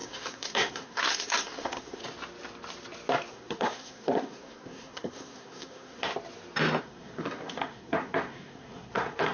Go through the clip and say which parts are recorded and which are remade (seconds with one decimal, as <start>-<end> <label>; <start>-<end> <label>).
0.0-2.0 remade; 2.0-3.3 recorded; 3.3-6.1 remade; 6.1-6.8 recorded; 6.8-9.3 remade